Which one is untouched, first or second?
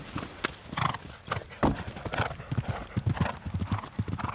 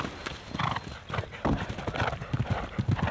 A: first